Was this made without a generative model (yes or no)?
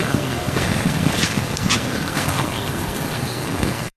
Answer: no